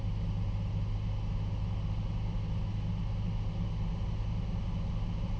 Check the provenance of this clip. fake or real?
real